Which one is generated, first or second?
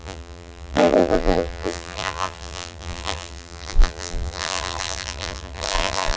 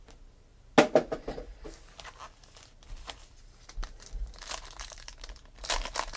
first